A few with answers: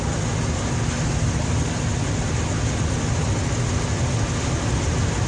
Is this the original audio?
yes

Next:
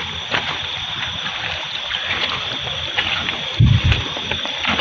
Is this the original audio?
yes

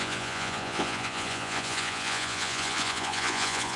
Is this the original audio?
no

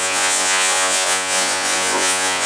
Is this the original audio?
no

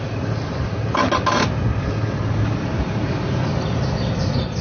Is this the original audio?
yes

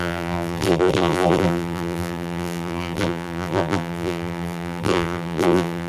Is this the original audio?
no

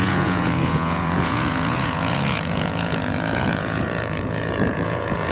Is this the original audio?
no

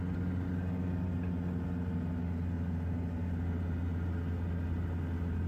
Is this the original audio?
yes